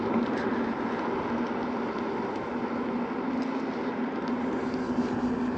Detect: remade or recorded recorded